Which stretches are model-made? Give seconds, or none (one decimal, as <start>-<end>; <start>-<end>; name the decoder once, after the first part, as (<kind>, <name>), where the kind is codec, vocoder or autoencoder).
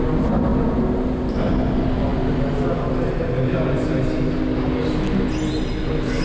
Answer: none